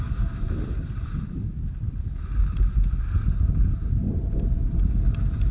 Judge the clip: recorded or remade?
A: recorded